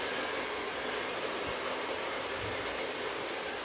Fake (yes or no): no